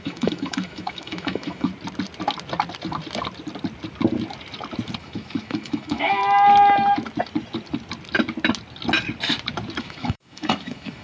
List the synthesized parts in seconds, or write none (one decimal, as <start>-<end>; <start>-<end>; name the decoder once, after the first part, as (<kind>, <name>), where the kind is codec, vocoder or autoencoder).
0.0-1.7 (autoencoder, DAC-VAE); 5.0-6.2; 9.8-11.0